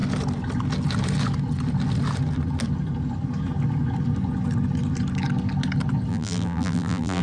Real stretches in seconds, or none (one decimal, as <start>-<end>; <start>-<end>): 0.0-6.1